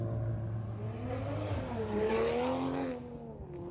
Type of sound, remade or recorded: recorded